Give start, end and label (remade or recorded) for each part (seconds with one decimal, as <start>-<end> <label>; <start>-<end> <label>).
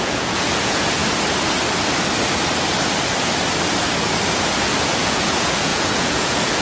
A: 0.0-1.0 remade; 1.0-4.8 recorded; 4.8-6.6 remade